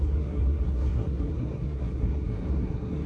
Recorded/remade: remade